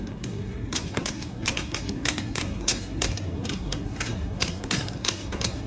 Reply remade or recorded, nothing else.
remade